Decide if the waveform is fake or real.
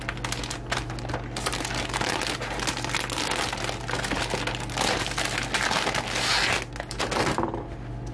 real